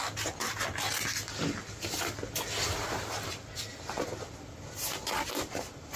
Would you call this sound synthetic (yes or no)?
no